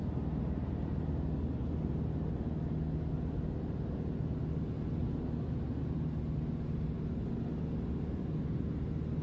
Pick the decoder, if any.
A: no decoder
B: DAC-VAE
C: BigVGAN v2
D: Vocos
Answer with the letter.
A